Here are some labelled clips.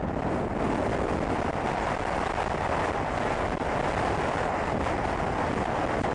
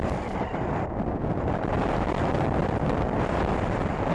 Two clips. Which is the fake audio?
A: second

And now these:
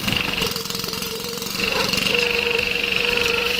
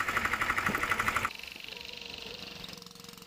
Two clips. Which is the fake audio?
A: first